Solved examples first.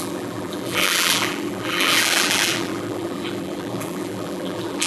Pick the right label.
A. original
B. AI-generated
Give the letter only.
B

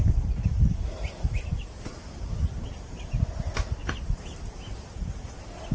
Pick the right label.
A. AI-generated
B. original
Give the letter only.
B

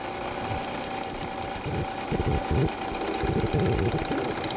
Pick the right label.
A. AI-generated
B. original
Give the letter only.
B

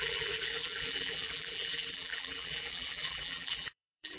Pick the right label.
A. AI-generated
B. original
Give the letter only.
A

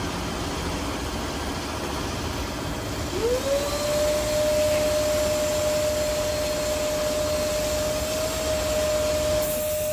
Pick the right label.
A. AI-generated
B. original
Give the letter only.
B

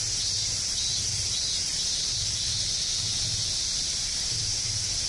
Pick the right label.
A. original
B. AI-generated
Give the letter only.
A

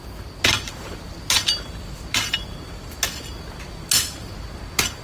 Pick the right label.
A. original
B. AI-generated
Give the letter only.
A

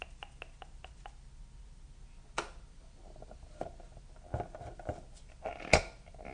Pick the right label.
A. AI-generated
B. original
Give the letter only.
B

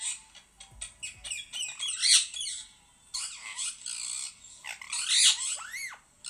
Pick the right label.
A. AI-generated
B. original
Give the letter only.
B